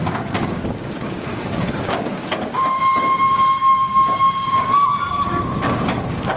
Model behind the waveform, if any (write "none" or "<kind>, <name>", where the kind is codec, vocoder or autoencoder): codec, DAC